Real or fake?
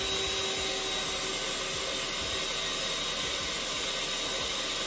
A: real